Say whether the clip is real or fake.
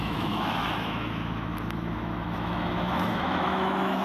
fake